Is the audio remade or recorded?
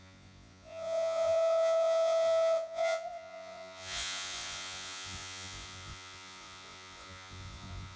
remade